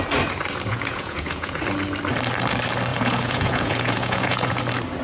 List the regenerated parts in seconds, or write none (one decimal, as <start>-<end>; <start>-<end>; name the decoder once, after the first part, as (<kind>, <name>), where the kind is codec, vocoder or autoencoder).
0.7-1.6 (vocoder, Vocos); 2.9-4.6